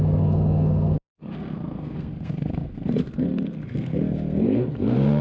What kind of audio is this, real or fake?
fake